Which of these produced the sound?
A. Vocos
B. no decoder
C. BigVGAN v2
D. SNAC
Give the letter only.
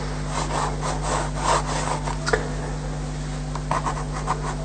B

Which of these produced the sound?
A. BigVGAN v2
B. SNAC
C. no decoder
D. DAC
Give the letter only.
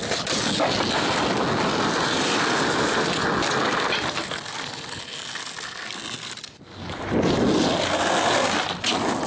C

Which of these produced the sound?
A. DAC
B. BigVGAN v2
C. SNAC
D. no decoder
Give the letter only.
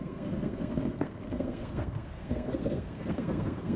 C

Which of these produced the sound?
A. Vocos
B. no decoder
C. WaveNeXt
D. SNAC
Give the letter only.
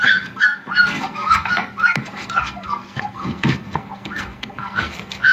D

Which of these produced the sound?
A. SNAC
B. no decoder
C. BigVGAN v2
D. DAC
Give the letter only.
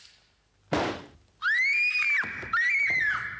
B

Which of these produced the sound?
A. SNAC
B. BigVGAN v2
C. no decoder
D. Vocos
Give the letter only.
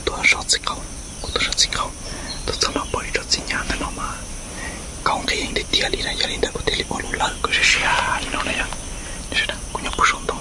C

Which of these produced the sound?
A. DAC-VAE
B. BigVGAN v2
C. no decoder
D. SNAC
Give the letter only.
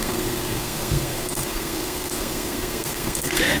D